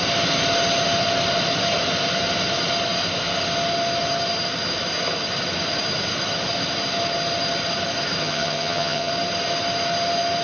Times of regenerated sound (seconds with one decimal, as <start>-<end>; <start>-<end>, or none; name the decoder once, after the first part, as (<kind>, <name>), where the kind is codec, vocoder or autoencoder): 8.2-9.1 (vocoder, HiFi-GAN)